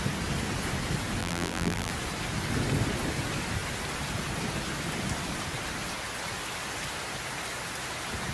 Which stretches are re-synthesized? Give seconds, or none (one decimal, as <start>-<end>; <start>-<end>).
1.2-1.9